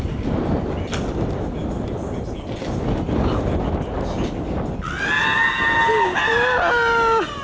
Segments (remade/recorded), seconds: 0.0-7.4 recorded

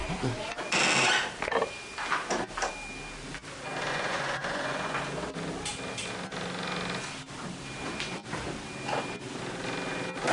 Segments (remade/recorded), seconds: 0.0-3.9 recorded; 3.9-5.0 remade; 5.0-10.3 recorded

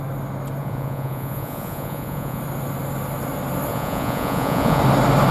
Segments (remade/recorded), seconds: 0.0-0.6 recorded; 0.6-2.4 remade; 2.4-3.7 recorded; 3.7-4.8 remade; 4.8-5.3 recorded

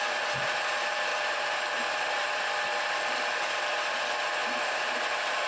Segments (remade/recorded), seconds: 0.0-2.7 remade; 2.7-3.9 recorded; 3.9-5.5 remade